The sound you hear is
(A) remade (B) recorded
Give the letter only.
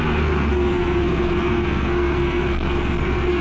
A